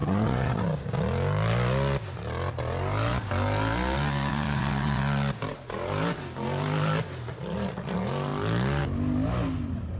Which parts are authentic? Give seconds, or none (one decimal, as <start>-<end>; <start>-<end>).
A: 0.6-4.3; 5.0-10.0